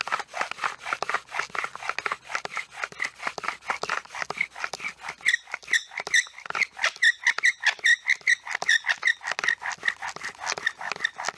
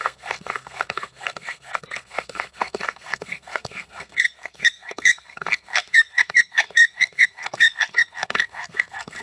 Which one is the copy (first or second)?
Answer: second